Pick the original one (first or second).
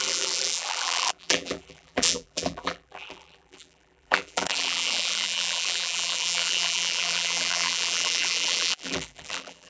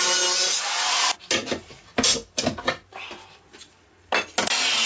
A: second